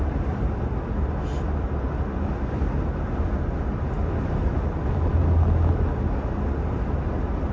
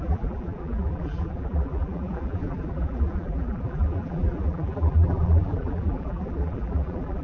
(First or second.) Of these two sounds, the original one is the first